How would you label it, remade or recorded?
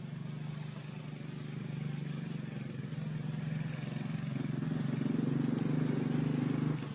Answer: recorded